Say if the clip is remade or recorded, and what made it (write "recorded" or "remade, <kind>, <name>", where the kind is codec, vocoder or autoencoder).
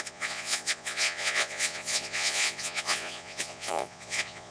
remade, vocoder, Vocos